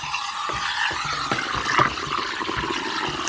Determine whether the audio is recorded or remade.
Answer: recorded